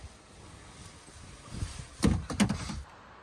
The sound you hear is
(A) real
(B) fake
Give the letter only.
A